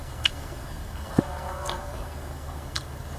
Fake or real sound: fake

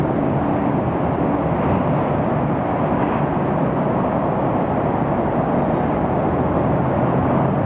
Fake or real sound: real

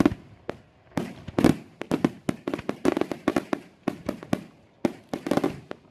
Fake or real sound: real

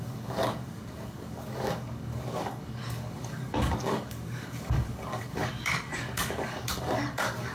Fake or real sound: fake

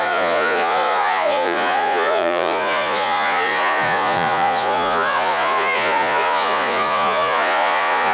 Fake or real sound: fake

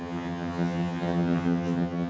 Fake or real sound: fake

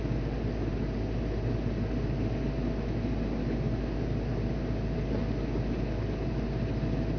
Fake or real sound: real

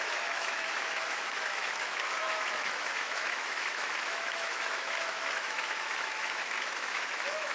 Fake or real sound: fake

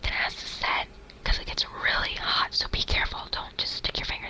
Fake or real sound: real